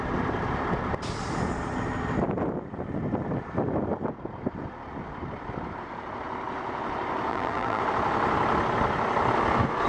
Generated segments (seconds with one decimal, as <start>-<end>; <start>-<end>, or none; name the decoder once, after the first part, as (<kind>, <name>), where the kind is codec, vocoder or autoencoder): 7.3-7.8 (vocoder, BigVGAN v2)